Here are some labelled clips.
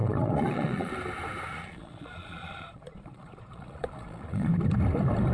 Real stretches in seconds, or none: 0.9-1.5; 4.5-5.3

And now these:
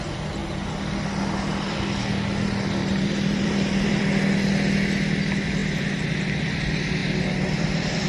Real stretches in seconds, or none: 0.0-2.8; 4.0-7.0

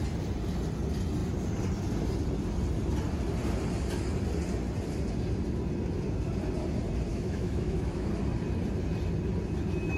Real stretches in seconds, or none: 0.0-7.1; 8.1-10.0

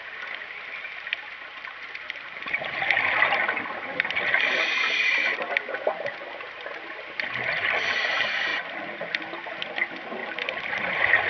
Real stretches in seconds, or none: 0.0-11.3

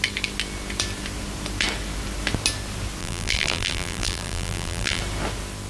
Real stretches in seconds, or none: 0.0-3.0; 5.0-5.7

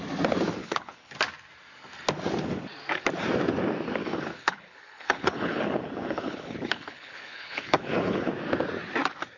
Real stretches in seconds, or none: 0.0-0.6; 1.1-4.0; 8.3-9.4